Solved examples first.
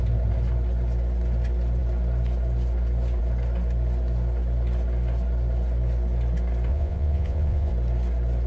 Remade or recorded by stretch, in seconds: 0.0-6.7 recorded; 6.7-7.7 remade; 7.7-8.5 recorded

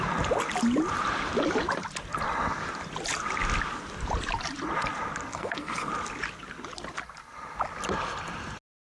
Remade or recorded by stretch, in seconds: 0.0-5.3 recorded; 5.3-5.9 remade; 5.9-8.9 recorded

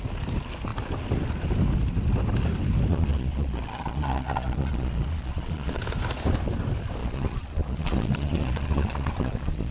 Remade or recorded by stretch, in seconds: 0.0-2.9 recorded; 2.9-5.8 remade; 5.8-7.0 recorded; 7.0-9.7 remade